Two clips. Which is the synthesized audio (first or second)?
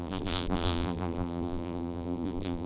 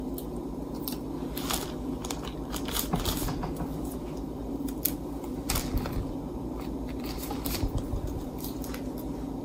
first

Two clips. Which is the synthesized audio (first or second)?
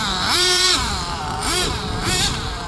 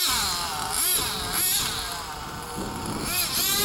first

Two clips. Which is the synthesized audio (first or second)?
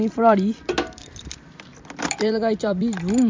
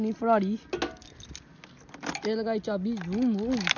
first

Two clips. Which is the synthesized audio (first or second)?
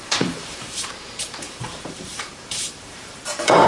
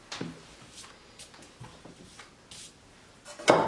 first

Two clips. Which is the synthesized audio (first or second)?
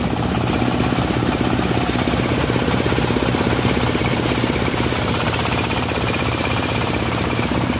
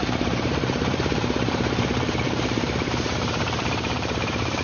second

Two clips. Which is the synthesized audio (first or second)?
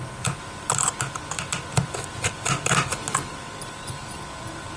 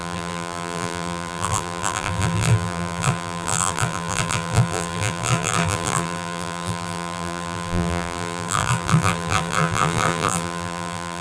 second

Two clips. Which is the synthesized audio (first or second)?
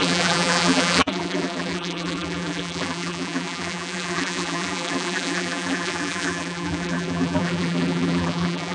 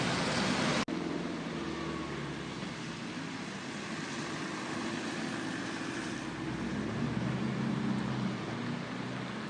first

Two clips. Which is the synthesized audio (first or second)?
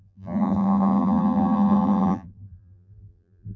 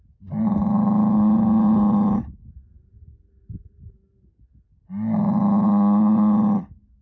first